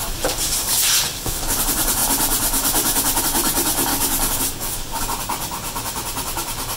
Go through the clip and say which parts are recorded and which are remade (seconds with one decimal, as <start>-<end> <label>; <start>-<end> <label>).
0.0-1.1 recorded; 1.1-1.6 remade; 1.6-3.9 recorded; 3.9-5.0 remade; 5.0-6.8 recorded